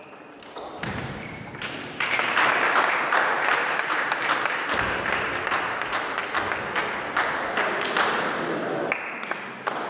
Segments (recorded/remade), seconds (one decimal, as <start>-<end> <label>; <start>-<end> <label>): 0.0-6.2 remade; 6.2-9.9 recorded